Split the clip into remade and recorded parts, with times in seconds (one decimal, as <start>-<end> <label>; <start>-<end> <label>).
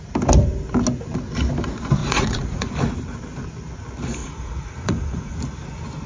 0.0-2.0 recorded; 2.0-2.7 remade; 2.7-4.2 recorded; 4.2-5.4 remade; 5.4-6.1 recorded